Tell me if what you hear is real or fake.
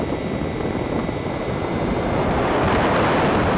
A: real